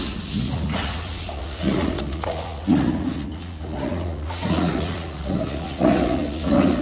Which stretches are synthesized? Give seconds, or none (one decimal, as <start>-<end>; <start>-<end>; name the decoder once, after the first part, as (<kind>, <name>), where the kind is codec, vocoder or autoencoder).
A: 0.0-6.8 (vocoder, Vocos)